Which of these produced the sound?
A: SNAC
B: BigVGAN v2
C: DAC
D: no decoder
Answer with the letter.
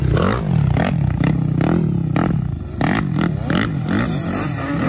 D